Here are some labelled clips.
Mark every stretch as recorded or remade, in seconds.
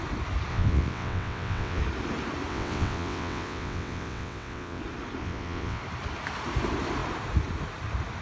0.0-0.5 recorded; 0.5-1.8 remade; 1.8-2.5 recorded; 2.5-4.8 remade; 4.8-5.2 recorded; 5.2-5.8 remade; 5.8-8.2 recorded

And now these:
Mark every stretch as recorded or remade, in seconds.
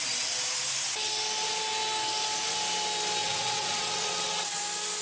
0.0-3.2 recorded; 3.2-4.6 remade; 4.6-5.0 recorded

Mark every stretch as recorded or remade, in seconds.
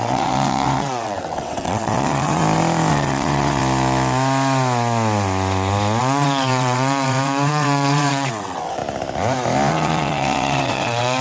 0.0-2.4 remade; 2.4-2.9 recorded; 2.9-3.6 remade; 3.6-6.0 recorded; 6.0-8.8 remade; 8.8-9.7 recorded; 9.7-11.2 remade